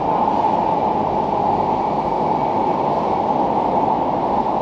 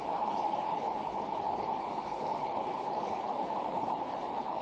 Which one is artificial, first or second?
second